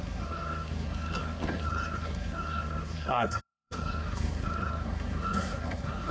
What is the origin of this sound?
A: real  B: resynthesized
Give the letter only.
B